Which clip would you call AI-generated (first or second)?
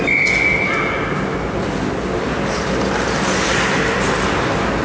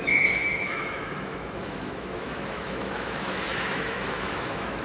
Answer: second